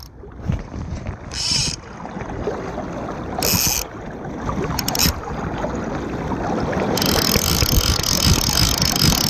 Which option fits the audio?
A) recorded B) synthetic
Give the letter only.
A